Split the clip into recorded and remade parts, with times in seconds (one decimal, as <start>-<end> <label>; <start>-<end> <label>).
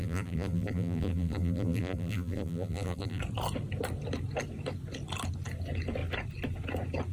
0.0-3.2 remade; 3.2-7.1 recorded